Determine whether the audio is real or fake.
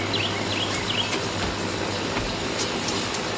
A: real